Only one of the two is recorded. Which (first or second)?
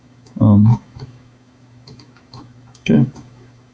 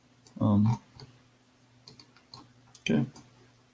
second